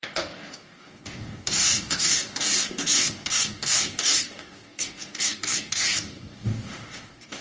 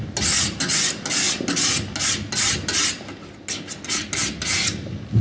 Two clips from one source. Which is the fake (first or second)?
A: first